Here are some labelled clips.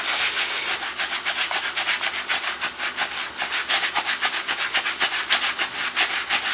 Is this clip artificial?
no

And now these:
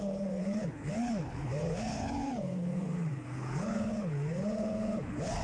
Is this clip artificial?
yes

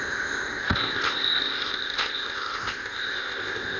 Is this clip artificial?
yes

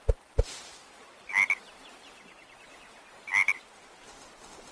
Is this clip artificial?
no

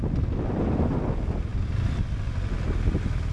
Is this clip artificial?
no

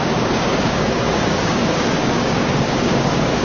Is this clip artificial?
yes